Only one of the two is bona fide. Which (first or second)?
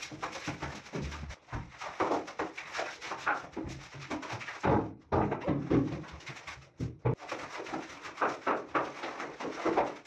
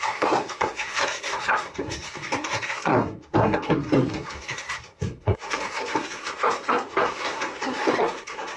first